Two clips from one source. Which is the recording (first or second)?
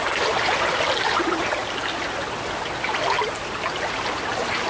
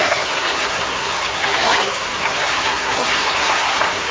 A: first